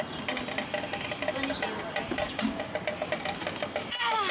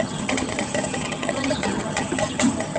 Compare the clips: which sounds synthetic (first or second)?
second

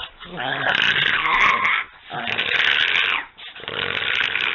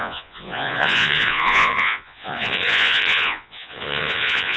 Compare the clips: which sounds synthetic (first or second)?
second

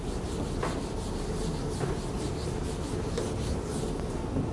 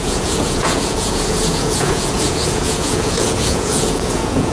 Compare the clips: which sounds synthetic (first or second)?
second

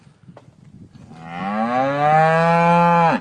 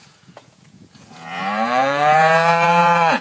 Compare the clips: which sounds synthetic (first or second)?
second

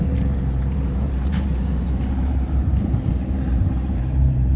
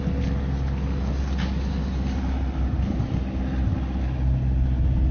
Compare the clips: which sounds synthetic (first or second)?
first